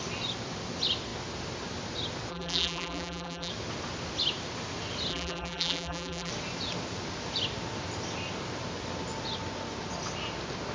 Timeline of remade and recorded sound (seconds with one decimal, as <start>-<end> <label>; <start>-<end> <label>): 0.0-2.3 recorded; 2.3-3.5 remade; 3.5-5.1 recorded; 5.1-6.3 remade; 6.3-10.7 recorded